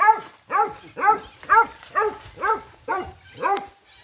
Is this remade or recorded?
recorded